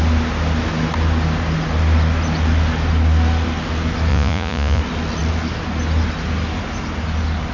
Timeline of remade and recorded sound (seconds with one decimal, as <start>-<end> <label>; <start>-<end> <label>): 0.0-4.1 recorded; 4.1-4.8 remade; 4.8-7.5 recorded